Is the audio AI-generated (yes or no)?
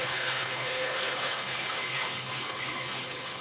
yes